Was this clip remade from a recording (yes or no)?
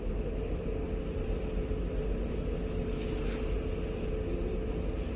no